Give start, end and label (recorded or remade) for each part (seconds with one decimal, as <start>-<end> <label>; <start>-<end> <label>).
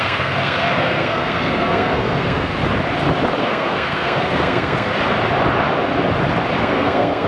0.0-2.5 remade; 2.5-3.4 recorded; 3.4-4.9 remade; 4.9-6.6 recorded; 6.6-7.3 remade